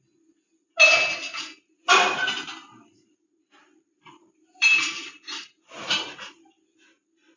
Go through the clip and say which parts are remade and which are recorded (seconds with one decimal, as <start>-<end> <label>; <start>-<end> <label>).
0.0-1.2 recorded; 1.2-1.7 remade; 1.7-2.7 recorded; 2.7-6.3 remade; 6.3-7.4 recorded